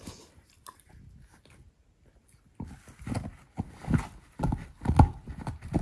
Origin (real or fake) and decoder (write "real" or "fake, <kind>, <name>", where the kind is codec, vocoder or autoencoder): real